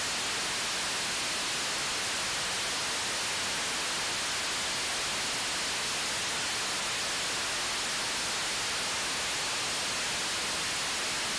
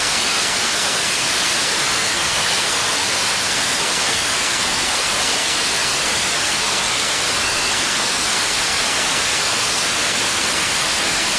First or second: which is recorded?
first